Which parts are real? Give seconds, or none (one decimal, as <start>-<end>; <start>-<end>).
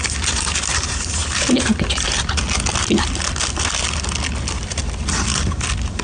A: 0.0-6.0